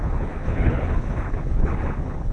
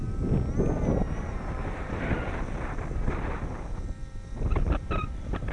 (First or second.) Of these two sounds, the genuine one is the second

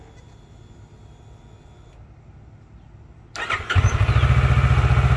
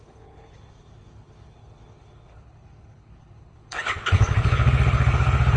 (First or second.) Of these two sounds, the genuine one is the first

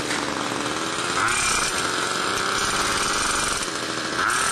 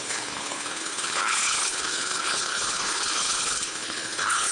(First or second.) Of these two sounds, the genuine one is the first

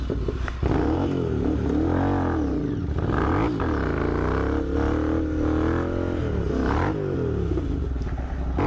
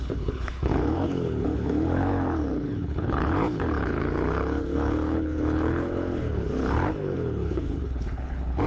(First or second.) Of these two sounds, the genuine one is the first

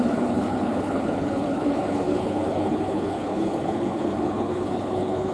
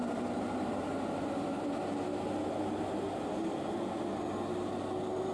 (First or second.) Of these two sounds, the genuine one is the second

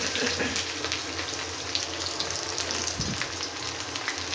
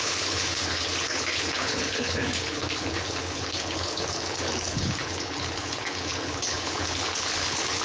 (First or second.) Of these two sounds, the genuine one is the first